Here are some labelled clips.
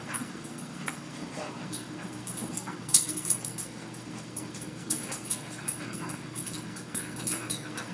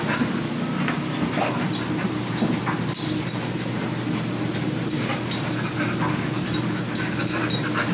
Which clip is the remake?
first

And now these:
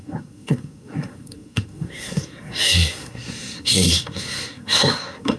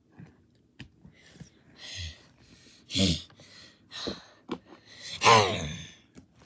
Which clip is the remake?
first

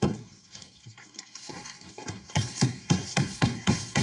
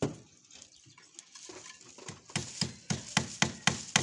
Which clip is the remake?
first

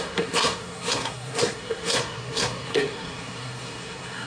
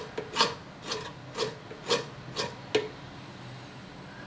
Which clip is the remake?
first